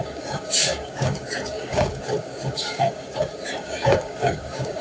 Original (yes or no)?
no